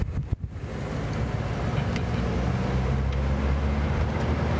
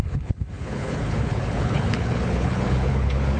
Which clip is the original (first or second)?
first